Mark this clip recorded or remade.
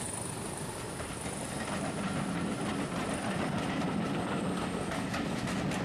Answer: recorded